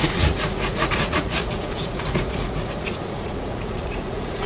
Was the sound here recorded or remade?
remade